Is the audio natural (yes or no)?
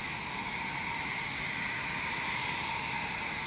yes